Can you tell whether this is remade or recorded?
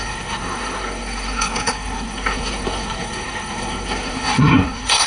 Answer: remade